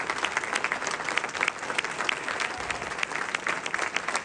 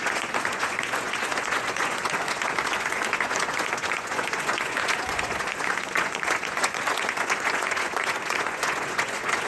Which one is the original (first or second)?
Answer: first